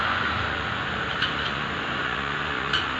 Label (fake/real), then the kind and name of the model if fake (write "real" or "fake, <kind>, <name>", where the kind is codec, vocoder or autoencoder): fake, vocoder, Vocos